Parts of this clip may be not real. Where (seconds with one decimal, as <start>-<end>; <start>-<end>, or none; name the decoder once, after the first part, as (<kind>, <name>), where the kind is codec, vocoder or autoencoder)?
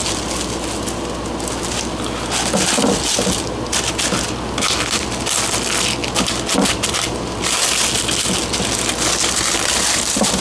none